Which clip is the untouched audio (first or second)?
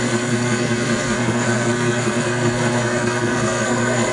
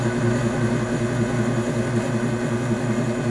second